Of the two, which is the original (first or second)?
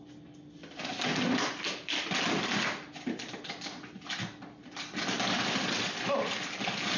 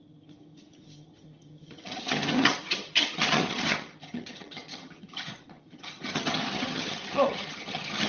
first